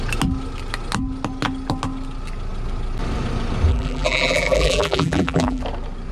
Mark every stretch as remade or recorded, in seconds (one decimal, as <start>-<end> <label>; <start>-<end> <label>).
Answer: 0.0-3.7 recorded; 3.7-5.6 remade; 5.6-6.1 recorded